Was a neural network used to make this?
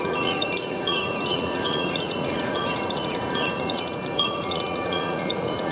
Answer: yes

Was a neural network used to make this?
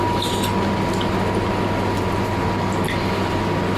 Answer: no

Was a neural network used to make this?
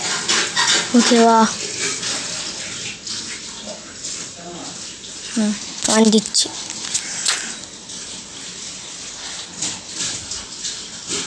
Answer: no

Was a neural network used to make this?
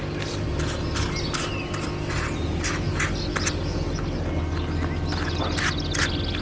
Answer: no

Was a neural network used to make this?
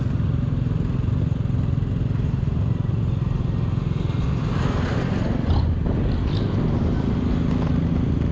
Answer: no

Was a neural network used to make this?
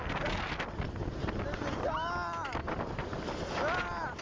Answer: no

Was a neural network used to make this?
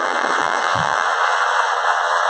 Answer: yes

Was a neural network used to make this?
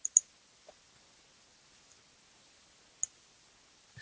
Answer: no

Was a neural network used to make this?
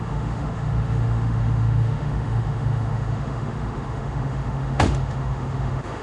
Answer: yes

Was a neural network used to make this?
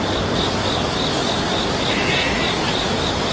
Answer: no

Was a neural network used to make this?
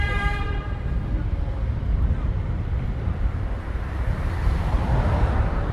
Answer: yes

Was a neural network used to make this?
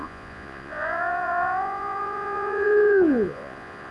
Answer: yes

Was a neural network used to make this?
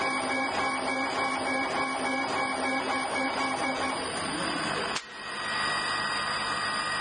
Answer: no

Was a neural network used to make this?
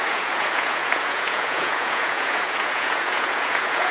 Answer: yes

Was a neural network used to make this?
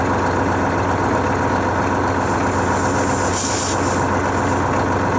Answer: no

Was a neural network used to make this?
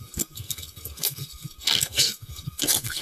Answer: yes